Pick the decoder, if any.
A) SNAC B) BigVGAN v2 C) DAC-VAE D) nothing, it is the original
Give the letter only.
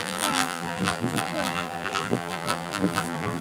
B